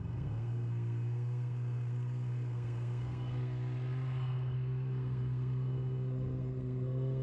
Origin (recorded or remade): remade